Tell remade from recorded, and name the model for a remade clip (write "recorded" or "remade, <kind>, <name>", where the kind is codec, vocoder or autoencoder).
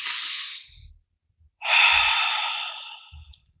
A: recorded